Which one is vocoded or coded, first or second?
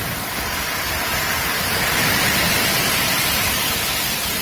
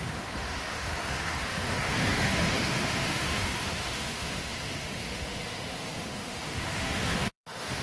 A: second